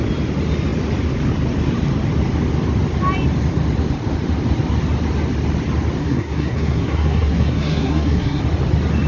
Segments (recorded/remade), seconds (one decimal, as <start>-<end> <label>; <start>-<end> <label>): 0.0-6.0 recorded; 6.0-8.4 remade; 8.4-9.1 recorded